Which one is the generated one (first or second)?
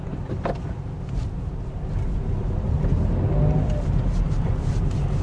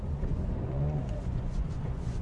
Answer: second